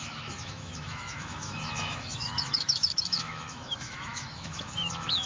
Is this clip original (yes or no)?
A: no